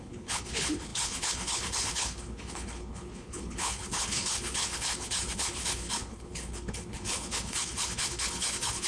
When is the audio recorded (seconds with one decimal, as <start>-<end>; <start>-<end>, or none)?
none